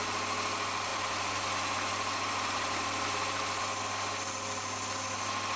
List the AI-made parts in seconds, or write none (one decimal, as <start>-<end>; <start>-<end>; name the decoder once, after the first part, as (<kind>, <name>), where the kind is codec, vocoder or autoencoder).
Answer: none